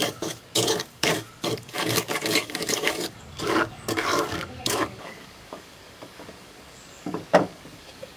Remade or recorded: remade